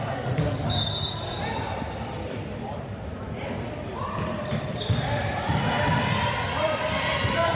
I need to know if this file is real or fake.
fake